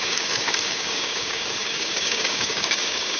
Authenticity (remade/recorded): remade